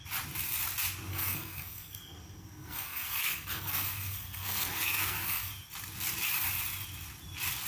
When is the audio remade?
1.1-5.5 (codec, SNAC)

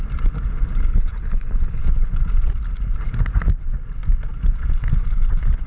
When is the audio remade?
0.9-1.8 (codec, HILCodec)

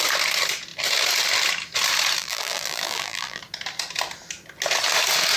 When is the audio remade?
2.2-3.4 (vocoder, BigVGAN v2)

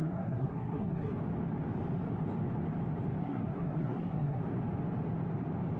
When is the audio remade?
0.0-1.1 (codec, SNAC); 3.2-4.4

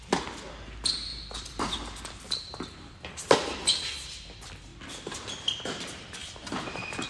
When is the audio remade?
1.1-3.8 (vocoder, BigVGAN v2); 6.2-7.1

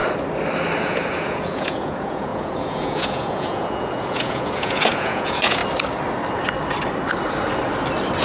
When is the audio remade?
0.8-5.6 (vocoder, Vocos)